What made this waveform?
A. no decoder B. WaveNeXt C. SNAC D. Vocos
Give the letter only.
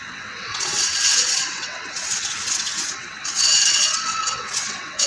B